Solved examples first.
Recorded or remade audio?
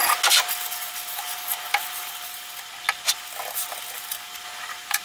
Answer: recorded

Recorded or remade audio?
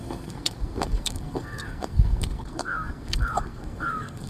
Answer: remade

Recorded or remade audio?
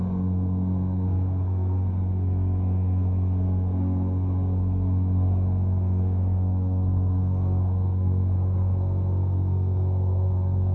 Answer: remade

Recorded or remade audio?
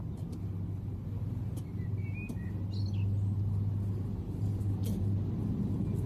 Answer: recorded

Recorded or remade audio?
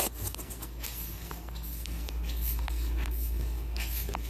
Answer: remade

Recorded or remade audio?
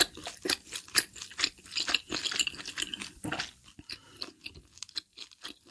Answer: recorded